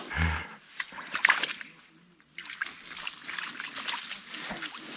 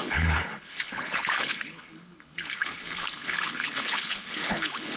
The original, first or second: first